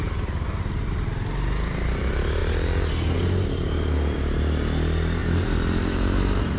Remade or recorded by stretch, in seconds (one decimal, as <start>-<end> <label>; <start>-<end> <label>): 0.0-5.2 recorded; 5.2-6.6 remade